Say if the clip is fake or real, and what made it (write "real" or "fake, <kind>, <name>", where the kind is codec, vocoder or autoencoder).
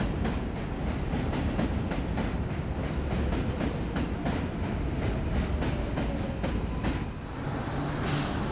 real